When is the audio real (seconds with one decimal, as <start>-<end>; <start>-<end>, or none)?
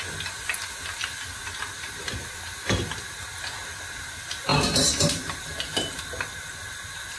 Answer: 0.0-4.5; 5.9-7.2